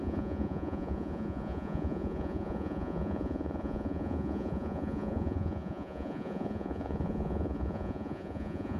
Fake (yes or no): yes